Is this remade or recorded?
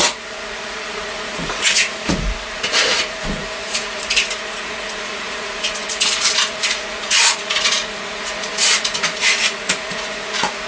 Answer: remade